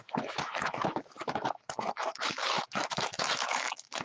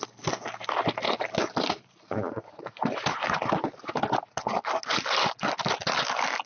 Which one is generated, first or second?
first